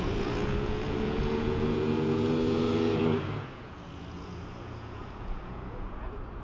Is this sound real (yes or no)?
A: no